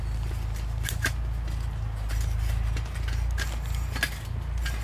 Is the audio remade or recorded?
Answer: recorded